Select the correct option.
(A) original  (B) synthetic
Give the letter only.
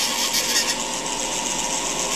A